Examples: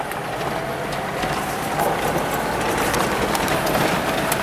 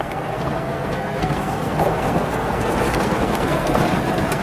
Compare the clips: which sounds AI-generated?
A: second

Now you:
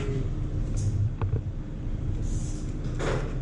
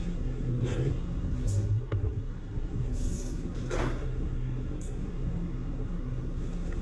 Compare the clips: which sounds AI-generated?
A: second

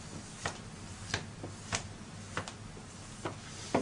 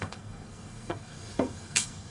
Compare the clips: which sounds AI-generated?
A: second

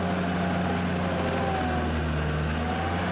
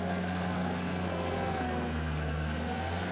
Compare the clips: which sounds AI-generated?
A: second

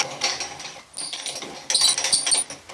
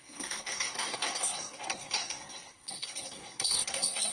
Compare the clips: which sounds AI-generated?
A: second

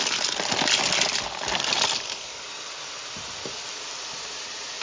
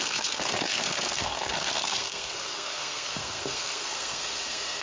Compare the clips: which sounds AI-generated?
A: second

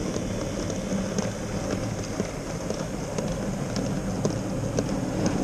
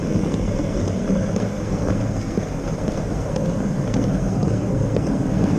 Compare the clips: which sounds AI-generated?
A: second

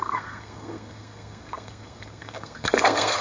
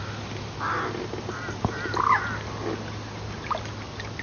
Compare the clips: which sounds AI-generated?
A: first